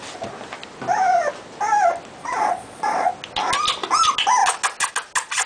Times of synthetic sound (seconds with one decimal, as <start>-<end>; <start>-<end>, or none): 2.2-3.1